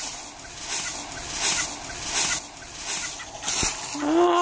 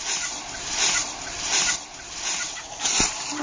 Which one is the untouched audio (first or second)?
first